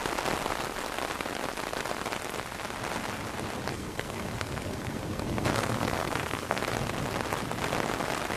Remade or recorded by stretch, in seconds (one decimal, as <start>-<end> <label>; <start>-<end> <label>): 0.0-3.7 recorded; 3.7-6.6 remade; 6.6-8.4 recorded